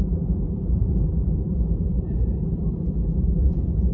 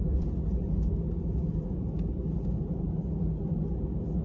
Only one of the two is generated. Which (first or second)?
first